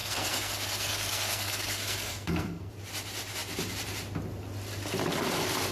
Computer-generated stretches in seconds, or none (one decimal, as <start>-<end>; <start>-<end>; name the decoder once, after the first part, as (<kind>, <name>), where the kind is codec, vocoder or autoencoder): 0.0-2.7 (codec, SNAC)